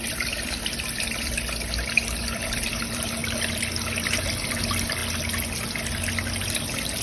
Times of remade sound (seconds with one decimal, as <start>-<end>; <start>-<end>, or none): 0.0-3.2; 3.9-5.0